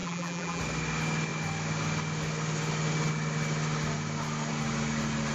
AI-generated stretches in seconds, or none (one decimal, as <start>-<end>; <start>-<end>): 0.0-0.6